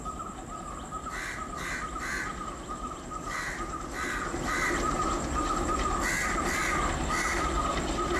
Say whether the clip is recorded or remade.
recorded